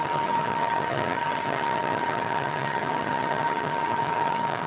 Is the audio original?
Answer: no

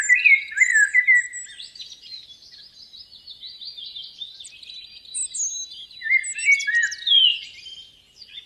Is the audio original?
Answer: yes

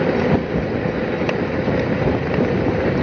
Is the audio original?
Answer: yes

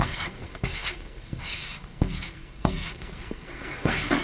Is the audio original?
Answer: no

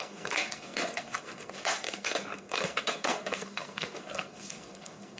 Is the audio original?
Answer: no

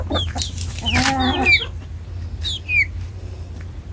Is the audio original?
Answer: yes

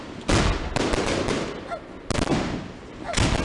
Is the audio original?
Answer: yes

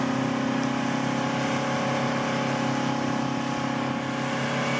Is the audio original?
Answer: yes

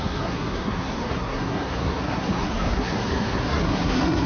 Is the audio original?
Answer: no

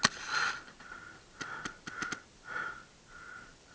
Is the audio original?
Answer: yes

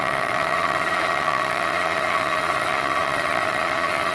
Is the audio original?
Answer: no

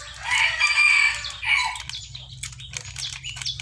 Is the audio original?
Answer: yes